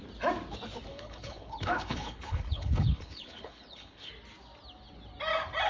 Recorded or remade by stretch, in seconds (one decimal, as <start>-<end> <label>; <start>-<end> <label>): 0.0-0.9 recorded; 0.9-4.1 remade; 4.1-5.7 recorded